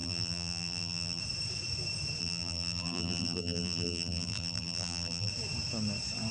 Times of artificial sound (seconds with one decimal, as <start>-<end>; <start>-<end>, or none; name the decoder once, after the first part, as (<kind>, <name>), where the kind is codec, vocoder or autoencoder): 0.0-1.2 (vocoder, BigVGAN v2); 2.2-5.3